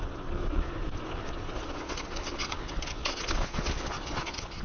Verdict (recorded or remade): remade